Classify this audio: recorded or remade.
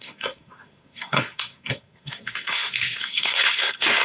remade